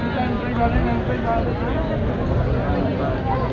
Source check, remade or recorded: recorded